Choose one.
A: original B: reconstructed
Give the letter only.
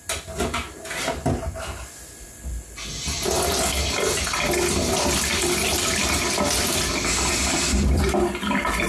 A